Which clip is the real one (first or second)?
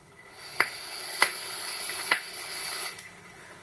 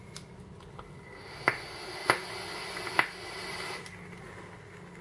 second